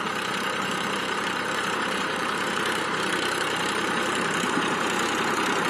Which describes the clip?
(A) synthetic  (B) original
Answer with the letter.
A